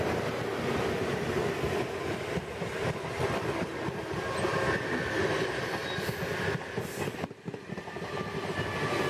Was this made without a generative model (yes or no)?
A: yes